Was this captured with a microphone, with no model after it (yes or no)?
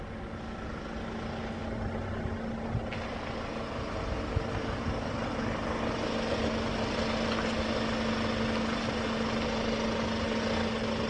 yes